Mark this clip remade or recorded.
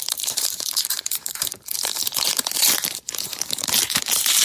remade